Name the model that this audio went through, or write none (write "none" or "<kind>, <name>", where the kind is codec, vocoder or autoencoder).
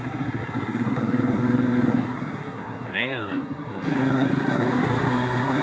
codec, SNAC